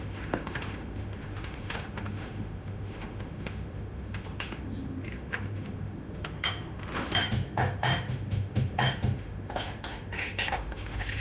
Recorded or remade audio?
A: remade